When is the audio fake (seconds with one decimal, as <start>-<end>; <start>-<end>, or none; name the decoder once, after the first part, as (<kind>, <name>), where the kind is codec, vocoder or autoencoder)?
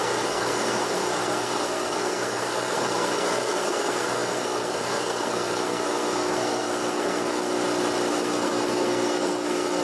0.0-7.6 (codec, SNAC); 8.1-9.8